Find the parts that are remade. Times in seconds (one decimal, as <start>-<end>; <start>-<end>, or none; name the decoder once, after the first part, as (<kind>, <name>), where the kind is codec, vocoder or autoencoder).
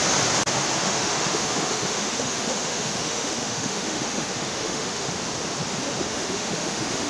0.8-5.1 (autoencoder, DAC-VAE); 6.0-7.1